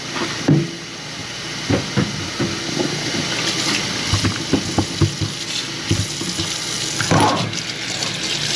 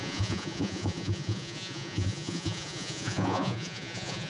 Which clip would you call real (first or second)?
first